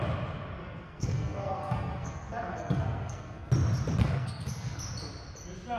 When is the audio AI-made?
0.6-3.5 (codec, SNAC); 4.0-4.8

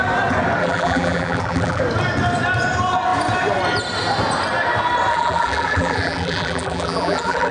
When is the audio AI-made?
0.6-1.8 (vocoder, BigVGAN v2); 5.1-7.5

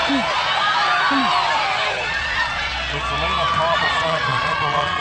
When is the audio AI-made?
1.9-2.7 (vocoder, Vocos); 3.7-5.0

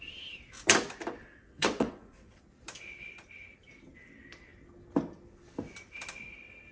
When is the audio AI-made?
1.2-2.4 (vocoder, WaveNeXt)

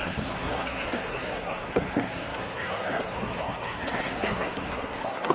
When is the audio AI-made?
0.0-5.3 (codec, SNAC)